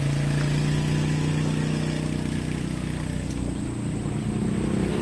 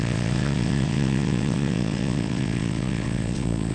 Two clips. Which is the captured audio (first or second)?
first